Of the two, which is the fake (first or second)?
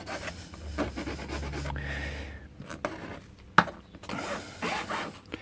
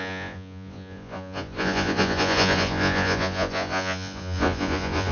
second